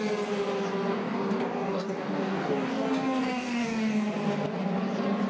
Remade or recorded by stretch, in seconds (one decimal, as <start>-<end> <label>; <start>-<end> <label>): 0.0-0.9 recorded; 0.9-4.1 remade; 4.1-5.3 recorded

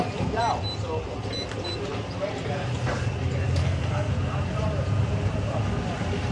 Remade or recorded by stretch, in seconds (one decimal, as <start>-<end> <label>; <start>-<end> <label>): 0.0-3.6 recorded; 3.6-4.1 remade; 4.1-6.3 recorded

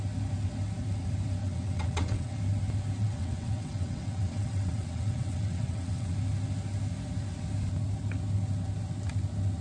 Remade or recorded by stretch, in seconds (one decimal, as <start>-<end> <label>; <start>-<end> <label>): 0.0-1.4 recorded; 1.4-2.4 remade; 2.4-3.0 recorded; 3.0-6.1 remade; 6.1-9.6 recorded

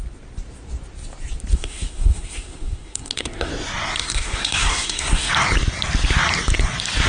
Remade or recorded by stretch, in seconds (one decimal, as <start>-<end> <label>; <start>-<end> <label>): 0.0-1.5 recorded; 1.5-3.5 remade; 3.5-4.0 recorded; 4.0-5.3 remade; 5.3-7.1 recorded

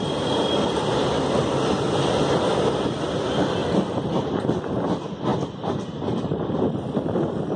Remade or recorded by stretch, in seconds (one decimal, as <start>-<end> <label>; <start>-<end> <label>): 0.0-7.6 recorded

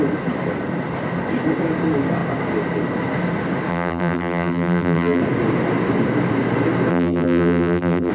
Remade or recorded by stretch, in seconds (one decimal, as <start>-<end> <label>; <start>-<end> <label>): 0.0-3.7 recorded; 3.7-5.2 remade; 5.2-6.9 recorded; 6.9-8.1 remade

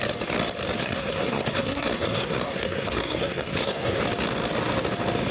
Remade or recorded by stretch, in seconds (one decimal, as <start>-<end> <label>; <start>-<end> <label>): 0.0-0.8 recorded; 0.8-4.0 remade; 4.0-5.3 recorded